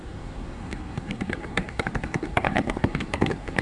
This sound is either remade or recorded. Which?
remade